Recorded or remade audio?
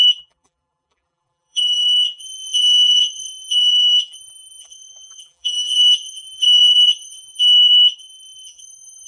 remade